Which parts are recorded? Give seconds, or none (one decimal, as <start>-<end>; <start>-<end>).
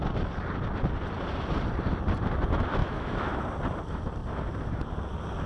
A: 0.0-2.8; 3.4-5.5